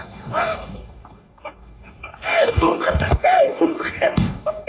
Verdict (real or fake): fake